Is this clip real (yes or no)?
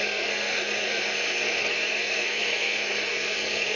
no